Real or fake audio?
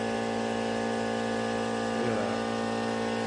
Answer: real